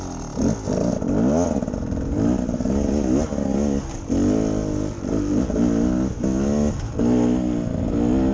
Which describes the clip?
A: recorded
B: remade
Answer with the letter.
A